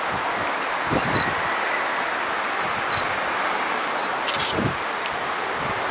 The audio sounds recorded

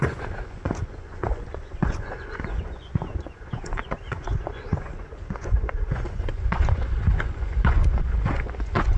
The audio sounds remade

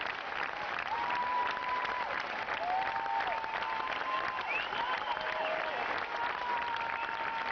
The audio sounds recorded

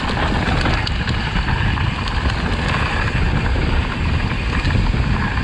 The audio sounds recorded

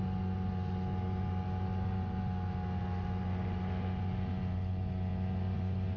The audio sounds recorded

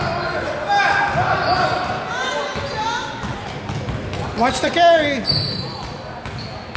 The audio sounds recorded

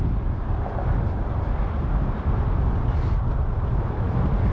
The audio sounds recorded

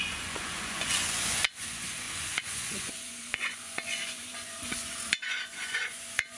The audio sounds remade